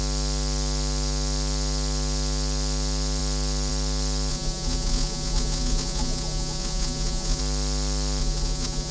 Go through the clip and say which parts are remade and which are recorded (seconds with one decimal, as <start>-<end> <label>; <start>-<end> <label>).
0.0-4.3 recorded; 4.3-7.4 remade; 7.4-8.2 recorded; 8.2-8.9 remade